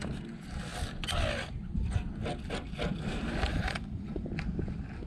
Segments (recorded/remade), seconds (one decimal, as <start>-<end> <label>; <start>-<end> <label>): 0.0-3.5 recorded; 3.5-4.3 remade; 4.3-5.1 recorded